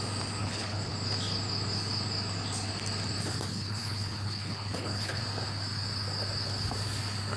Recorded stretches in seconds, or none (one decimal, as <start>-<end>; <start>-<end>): 0.0-0.4; 0.9-3.5; 5.2-7.4

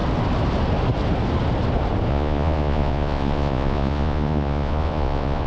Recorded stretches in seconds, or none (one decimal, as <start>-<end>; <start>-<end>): 0.0-2.1